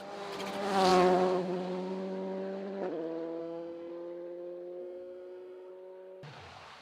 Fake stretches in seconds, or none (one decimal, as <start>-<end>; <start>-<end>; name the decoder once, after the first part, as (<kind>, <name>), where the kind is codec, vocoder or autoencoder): 3.4-3.9 (autoencoder, DAC-VAE); 4.8-5.7